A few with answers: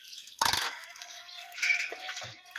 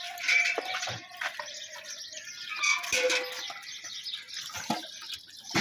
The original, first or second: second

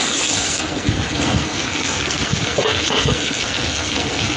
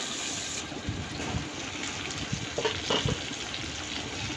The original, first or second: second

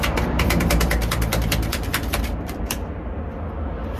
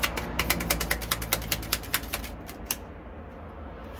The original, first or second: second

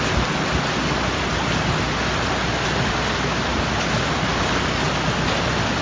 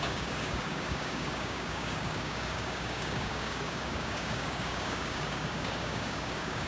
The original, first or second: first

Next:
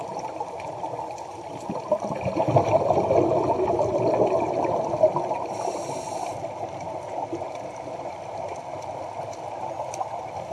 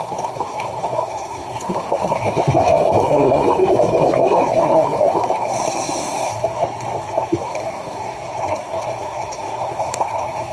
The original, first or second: first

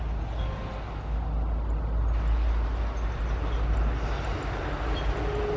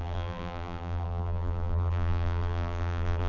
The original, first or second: first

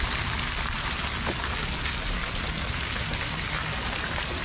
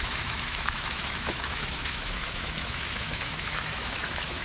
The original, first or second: first